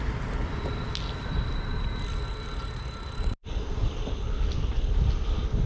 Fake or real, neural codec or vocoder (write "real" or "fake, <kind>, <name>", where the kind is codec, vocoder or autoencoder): real